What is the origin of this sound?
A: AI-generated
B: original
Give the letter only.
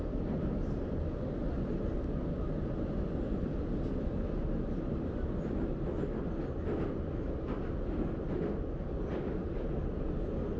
B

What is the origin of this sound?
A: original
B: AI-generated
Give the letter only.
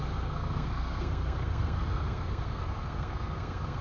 B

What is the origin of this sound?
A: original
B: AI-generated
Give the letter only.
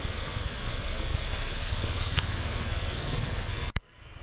B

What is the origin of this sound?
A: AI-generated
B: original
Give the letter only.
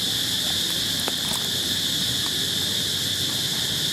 B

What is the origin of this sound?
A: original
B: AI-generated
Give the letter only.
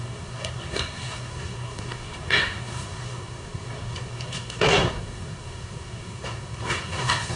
B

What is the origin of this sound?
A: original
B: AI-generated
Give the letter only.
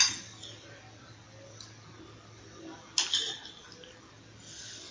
A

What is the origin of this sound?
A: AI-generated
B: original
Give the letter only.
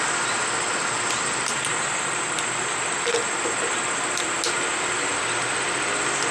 B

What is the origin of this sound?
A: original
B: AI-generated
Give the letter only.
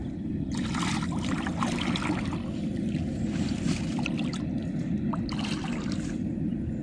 A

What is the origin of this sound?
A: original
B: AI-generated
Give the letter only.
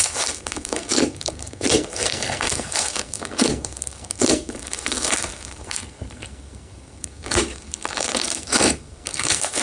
B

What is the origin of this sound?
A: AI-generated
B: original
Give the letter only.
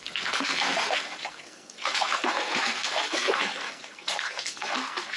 A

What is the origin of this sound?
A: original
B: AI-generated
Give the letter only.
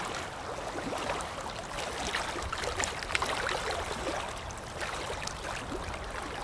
A